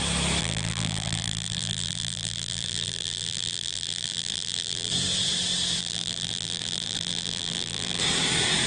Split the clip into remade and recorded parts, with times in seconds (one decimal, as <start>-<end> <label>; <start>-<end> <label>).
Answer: 0.0-0.4 recorded; 0.4-4.9 remade; 4.9-5.8 recorded; 5.8-8.0 remade; 8.0-8.7 recorded